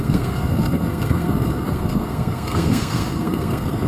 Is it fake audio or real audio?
fake